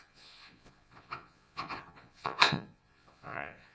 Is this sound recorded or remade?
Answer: remade